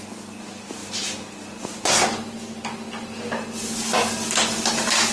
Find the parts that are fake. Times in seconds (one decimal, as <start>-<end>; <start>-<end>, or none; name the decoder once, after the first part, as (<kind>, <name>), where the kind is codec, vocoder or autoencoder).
none